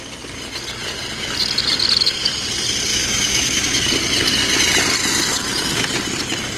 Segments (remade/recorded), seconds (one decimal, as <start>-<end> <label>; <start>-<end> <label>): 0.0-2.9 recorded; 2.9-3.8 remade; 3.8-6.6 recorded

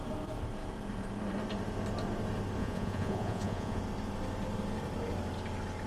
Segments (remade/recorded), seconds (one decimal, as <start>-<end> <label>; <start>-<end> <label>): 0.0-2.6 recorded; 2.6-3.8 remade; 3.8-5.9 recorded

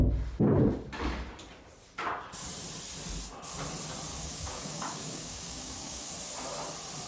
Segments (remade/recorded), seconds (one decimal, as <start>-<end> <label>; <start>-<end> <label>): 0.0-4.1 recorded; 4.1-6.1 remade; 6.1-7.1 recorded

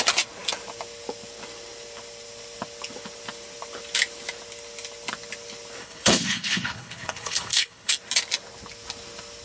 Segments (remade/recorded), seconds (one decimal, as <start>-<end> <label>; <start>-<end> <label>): 0.0-5.8 recorded; 5.8-7.9 remade; 7.9-9.4 recorded